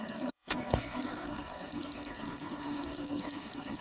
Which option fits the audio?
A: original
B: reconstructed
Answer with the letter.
B